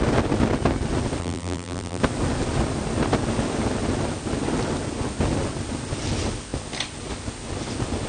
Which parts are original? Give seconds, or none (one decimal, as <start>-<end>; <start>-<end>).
0.0-1.2; 2.0-8.1

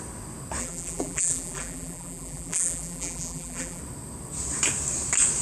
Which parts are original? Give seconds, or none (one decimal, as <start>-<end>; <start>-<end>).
0.0-0.6; 3.8-5.4

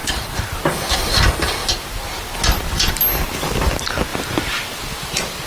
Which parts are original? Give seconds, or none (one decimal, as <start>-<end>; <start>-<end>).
0.6-4.1

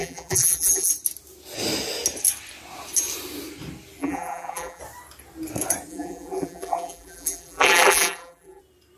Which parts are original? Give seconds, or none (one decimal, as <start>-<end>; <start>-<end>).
0.9-4.0; 4.8-5.9; 8.6-9.0

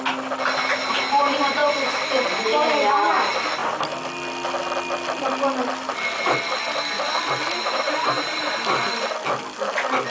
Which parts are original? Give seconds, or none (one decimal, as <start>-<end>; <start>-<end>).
0.0-7.6; 8.4-10.1

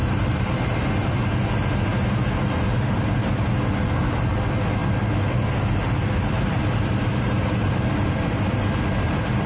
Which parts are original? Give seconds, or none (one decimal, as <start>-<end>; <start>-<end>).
0.6-4.8